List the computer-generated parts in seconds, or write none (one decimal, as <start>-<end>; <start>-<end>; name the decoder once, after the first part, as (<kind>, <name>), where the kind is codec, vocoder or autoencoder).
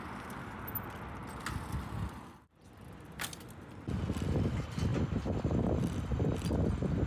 none